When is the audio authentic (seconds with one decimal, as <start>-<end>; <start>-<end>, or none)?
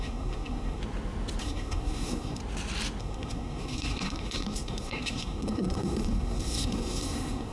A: 0.8-1.4; 2.4-3.0